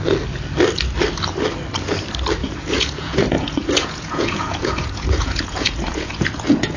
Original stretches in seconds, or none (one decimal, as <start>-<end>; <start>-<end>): 0.0-2.4